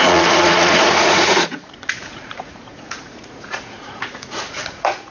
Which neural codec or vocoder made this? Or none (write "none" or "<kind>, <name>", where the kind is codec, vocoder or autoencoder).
vocoder, Vocos